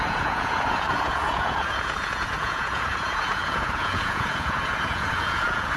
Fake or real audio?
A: fake